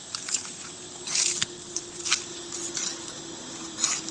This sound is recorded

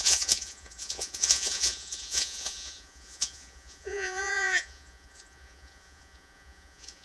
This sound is remade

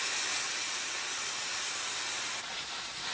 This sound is recorded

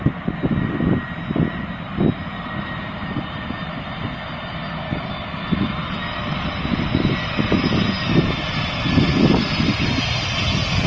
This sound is recorded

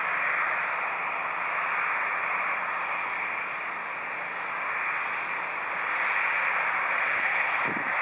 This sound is recorded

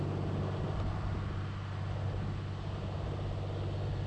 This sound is recorded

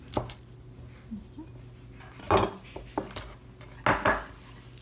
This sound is recorded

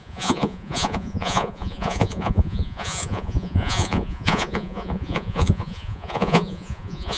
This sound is remade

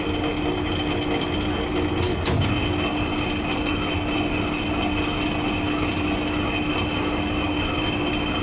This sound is recorded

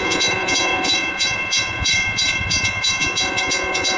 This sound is remade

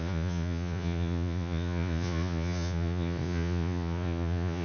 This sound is remade